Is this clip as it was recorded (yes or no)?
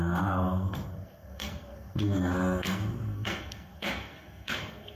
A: no